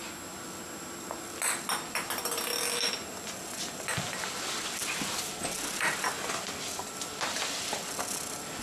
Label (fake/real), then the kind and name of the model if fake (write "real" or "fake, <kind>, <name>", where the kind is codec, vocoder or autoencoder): real